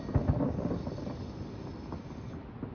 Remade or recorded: recorded